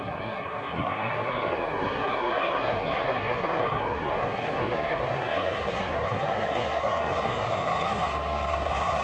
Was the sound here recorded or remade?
remade